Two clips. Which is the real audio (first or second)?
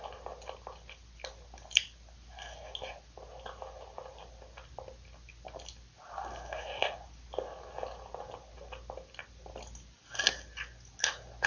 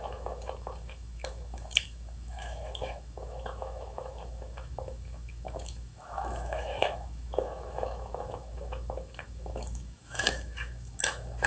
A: first